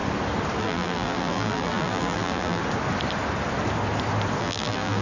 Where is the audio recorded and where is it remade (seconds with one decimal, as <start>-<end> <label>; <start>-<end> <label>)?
0.0-0.6 recorded; 0.6-2.6 remade; 2.6-4.4 recorded; 4.4-5.0 remade